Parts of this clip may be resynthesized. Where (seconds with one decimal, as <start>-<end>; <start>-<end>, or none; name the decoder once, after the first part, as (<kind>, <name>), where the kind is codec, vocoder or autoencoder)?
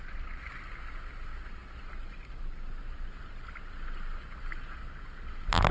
none